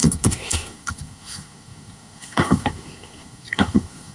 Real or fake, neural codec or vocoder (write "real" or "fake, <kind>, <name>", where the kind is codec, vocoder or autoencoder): fake, codec, SNAC